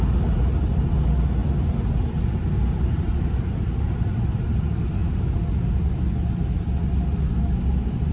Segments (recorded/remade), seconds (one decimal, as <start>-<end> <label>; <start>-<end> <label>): 0.0-1.4 recorded; 1.4-3.3 remade; 3.3-8.1 recorded